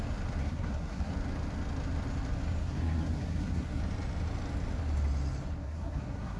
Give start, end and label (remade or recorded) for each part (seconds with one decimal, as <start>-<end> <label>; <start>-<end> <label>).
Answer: 0.0-0.4 recorded; 0.4-1.1 remade; 1.1-2.6 recorded; 2.6-3.8 remade; 3.8-5.6 recorded; 5.6-6.4 remade

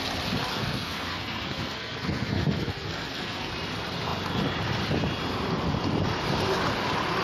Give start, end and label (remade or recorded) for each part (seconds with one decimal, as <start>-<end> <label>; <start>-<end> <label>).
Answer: 0.0-0.5 recorded; 0.5-3.5 remade; 3.5-7.2 recorded

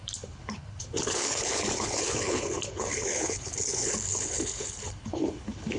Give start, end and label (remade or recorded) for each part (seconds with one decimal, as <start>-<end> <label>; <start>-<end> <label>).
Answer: 0.0-5.8 remade

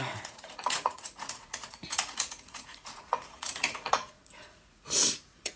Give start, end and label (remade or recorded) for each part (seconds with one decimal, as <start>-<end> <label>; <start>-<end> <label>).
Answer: 0.0-5.6 remade